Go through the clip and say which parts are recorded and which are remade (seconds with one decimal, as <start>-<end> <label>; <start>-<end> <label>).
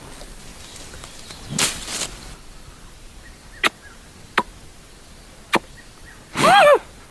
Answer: 0.0-7.1 recorded